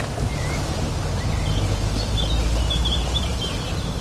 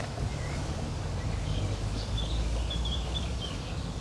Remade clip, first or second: second